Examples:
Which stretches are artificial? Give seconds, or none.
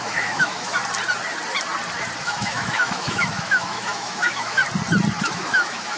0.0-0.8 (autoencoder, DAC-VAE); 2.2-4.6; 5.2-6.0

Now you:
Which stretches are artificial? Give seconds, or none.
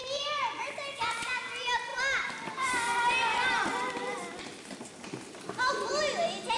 none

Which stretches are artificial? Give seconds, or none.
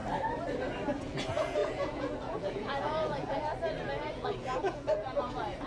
1.0-3.5 (vocoder, Vocos); 4.1-5.7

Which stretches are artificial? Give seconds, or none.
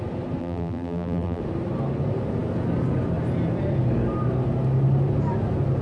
0.4-1.4 (vocoder, BigVGAN v2)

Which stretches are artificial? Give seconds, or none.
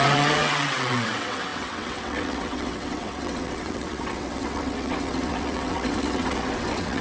0.0-7.0 (vocoder, WaveNeXt)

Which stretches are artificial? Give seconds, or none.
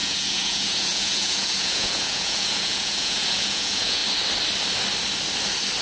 0.0-4.0 (vocoder, Vocos)